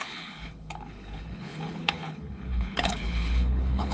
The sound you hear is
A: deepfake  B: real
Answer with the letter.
A